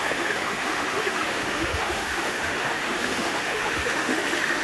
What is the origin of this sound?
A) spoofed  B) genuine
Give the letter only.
A